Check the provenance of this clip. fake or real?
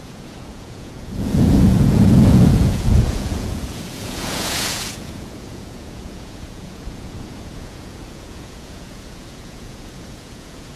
fake